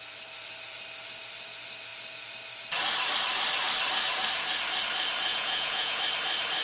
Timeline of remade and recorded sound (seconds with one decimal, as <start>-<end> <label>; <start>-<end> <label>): 0.0-5.3 recorded; 5.3-6.0 remade; 6.0-6.6 recorded